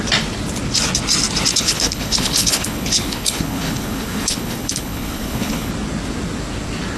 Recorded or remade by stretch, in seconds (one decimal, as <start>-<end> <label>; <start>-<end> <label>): 0.0-1.5 recorded; 1.5-5.7 remade; 5.7-7.0 recorded